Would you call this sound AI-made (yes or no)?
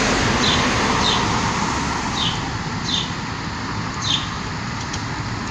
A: yes